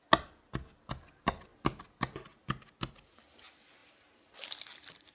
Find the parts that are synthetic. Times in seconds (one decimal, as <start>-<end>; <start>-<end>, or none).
none